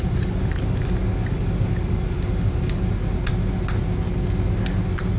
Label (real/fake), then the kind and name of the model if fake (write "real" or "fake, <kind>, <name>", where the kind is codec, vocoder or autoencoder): real